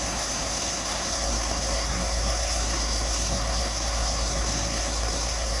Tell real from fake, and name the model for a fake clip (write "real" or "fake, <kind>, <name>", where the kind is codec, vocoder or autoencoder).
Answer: fake, codec, SNAC